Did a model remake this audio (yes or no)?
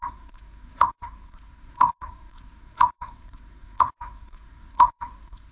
yes